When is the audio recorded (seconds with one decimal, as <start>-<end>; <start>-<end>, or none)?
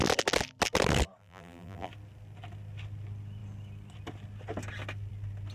0.0-1.2; 1.9-5.5